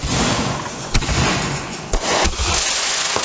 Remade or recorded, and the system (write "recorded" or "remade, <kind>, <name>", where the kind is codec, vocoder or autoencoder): remade, vocoder, Vocos